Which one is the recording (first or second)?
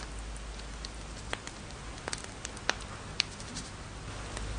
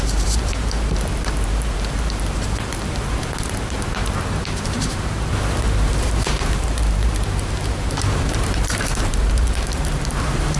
first